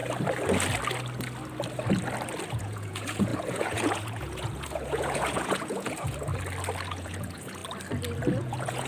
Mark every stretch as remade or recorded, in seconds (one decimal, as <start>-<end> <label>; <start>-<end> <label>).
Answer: 0.0-2.5 recorded; 2.5-6.3 remade; 6.3-6.9 recorded; 6.9-7.6 remade; 7.6-8.4 recorded; 8.4-8.9 remade